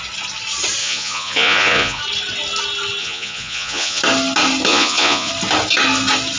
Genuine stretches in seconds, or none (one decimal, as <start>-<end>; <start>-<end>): 0.0-0.8; 2.0-3.0; 4.0-4.7; 5.3-6.4